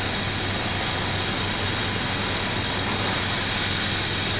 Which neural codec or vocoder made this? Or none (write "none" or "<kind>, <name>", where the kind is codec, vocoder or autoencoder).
none